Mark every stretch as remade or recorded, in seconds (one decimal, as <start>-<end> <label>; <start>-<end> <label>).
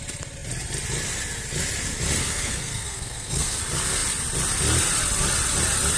0.0-2.2 recorded; 2.2-3.6 remade; 3.6-6.0 recorded